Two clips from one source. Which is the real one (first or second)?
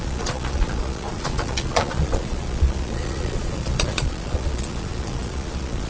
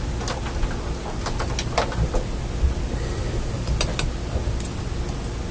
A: second